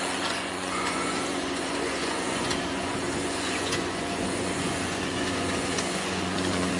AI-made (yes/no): yes